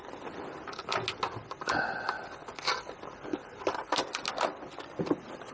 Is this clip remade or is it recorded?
recorded